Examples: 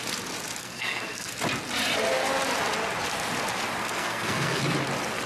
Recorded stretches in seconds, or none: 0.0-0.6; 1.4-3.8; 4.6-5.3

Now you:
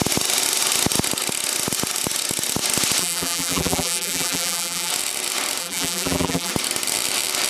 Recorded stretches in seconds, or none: 0.0-3.0; 4.9-5.6; 6.5-7.5

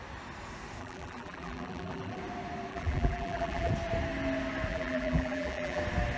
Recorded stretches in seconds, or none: 0.0-0.8; 2.2-2.7; 3.7-4.7; 5.8-6.2

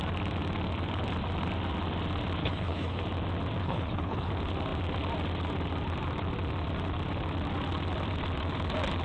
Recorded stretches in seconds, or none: 0.0-2.4; 3.0-3.6; 4.3-9.0

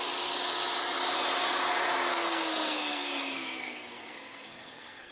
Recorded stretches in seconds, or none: 0.0-2.1

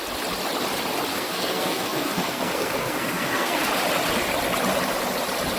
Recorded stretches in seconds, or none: 0.0-1.1; 3.7-5.6